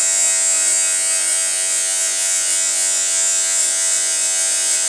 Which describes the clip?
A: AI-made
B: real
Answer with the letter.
A